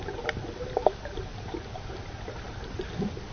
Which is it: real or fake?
real